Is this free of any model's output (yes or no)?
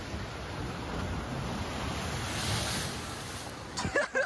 yes